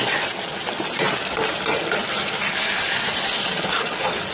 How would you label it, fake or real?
real